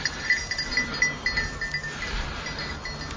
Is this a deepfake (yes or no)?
no